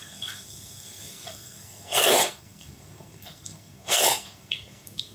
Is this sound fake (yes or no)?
yes